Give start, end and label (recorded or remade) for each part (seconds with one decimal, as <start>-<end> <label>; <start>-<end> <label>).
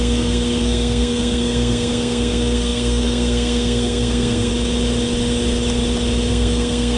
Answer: 0.0-4.5 remade; 4.5-6.3 recorded; 6.3-7.0 remade